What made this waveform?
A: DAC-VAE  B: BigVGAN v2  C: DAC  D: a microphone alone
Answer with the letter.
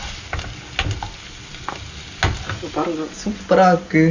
D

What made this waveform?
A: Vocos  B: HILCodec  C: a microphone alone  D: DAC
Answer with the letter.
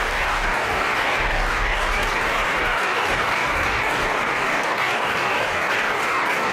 D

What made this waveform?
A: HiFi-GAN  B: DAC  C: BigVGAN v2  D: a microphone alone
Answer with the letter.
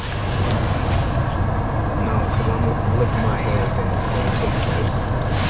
D